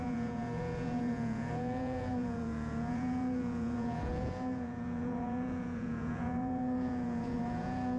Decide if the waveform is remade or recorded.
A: remade